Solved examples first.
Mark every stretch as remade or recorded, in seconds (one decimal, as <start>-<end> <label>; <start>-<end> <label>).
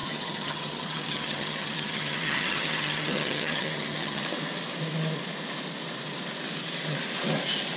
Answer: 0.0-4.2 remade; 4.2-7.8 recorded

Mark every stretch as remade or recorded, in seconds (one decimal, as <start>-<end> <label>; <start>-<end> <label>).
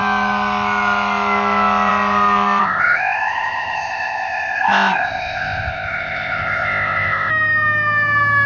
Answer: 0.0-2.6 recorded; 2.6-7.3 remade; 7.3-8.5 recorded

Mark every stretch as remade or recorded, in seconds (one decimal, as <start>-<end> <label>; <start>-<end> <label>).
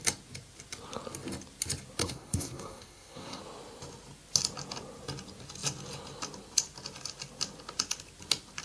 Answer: 0.0-2.0 recorded; 2.0-3.4 remade; 3.4-8.6 recorded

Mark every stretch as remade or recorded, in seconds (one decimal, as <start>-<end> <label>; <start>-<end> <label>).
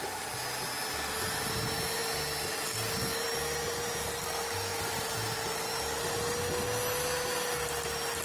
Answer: 0.0-8.2 recorded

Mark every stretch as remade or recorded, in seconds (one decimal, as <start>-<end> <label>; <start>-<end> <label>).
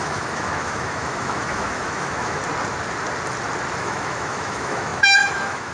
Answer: 0.0-2.4 remade; 2.4-3.8 recorded; 3.8-5.7 remade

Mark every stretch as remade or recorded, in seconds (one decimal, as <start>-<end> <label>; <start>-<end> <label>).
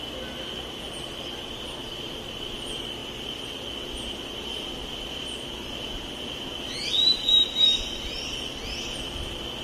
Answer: 0.0-9.6 recorded